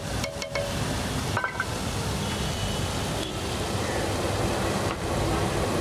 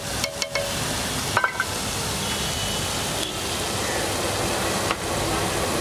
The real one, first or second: second